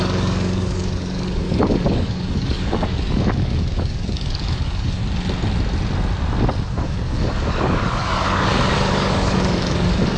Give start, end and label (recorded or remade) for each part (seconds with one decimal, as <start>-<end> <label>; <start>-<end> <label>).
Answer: 0.0-5.0 remade; 5.0-6.6 recorded; 6.6-10.2 remade